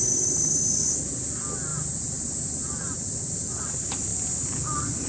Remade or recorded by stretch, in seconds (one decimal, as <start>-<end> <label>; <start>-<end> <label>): 0.0-1.7 recorded; 1.7-3.6 remade; 3.6-4.1 recorded; 4.1-4.6 remade; 4.6-5.1 recorded